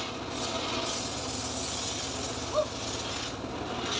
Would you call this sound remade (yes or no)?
no